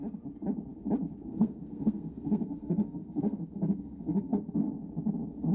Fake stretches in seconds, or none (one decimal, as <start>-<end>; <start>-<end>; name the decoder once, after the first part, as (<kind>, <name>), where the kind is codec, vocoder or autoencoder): 1.3-4.6 (codec, SNAC)